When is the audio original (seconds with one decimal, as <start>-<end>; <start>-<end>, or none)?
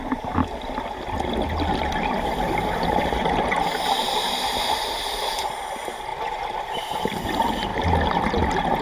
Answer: 0.0-8.8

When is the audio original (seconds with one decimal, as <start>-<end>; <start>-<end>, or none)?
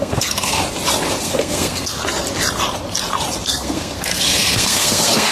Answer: 0.6-1.2; 2.0-3.4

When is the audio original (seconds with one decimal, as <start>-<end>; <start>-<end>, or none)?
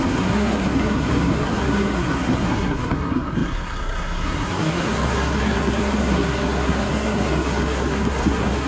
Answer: none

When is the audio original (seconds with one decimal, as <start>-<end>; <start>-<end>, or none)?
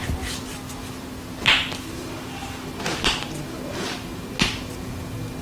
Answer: 0.0-5.4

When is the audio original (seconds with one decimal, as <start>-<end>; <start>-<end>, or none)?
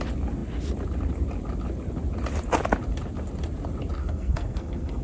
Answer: 0.0-4.0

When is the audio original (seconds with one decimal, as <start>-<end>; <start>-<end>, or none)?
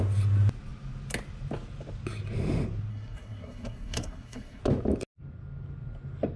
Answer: 0.0-2.9; 4.6-6.4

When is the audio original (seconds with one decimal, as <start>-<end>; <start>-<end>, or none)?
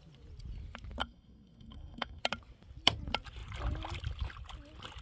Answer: 0.0-1.0; 2.2-5.0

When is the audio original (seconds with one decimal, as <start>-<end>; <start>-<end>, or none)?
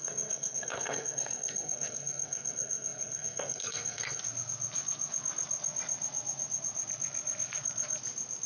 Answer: 4.2-8.5